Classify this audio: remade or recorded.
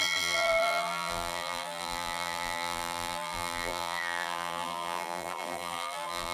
remade